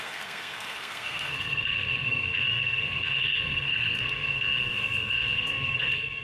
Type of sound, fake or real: fake